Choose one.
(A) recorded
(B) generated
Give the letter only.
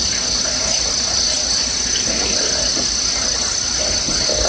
A